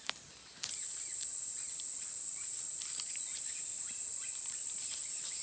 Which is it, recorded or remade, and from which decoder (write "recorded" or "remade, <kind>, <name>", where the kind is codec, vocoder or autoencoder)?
remade, vocoder, BigVGAN v2